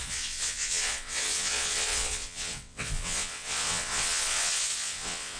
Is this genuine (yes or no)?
no